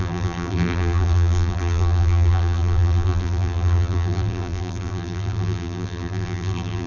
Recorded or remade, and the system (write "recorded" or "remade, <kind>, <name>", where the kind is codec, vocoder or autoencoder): remade, vocoder, BigVGAN v2